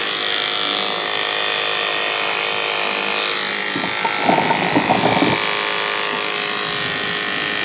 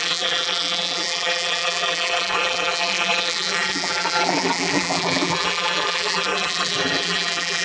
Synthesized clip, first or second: second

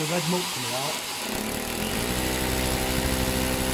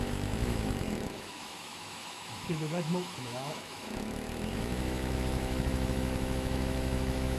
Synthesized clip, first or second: second